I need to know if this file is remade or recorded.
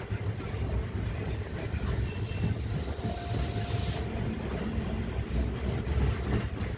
recorded